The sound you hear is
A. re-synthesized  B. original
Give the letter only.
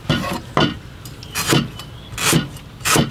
B